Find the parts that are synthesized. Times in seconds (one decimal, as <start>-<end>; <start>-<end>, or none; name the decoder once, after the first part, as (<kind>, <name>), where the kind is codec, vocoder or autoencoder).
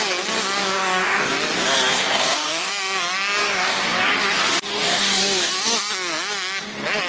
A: 0.6-1.3 (codec, DAC); 1.9-2.7; 3.4-4.1; 4.7-5.5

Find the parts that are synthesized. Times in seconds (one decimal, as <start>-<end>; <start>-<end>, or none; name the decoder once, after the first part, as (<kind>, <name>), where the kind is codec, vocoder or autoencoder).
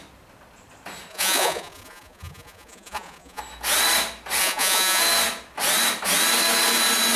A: 1.1-3.4 (vocoder, Vocos); 4.4-5.0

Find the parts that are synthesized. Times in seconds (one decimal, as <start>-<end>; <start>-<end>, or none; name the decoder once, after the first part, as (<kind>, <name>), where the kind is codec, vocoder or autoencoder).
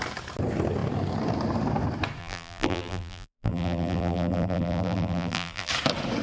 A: 2.2-5.7 (vocoder, BigVGAN v2)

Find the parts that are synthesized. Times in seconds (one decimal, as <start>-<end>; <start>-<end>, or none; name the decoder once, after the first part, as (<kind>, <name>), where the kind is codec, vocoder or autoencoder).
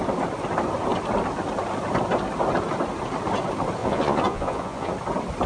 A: 3.8-4.9 (vocoder, Vocos)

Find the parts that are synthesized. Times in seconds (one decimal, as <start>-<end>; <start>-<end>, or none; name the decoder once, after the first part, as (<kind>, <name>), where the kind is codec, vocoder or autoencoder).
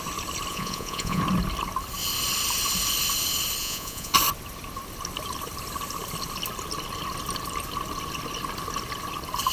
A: 0.5-1.2 (vocoder, Vocos); 3.6-4.1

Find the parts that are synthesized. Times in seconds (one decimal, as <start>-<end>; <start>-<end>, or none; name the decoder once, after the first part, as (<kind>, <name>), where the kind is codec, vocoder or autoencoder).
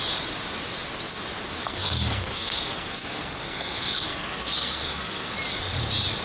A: 1.6-5.3 (codec, SNAC)